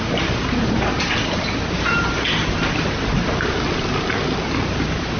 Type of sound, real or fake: real